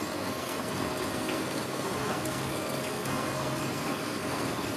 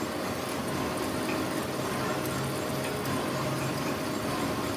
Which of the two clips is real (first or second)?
second